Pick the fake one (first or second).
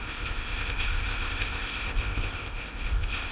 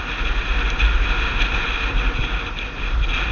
first